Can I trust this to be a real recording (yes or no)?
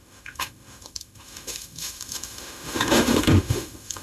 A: no